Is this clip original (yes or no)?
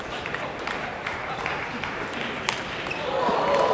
no